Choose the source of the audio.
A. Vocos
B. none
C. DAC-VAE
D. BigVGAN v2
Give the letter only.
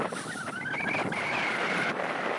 D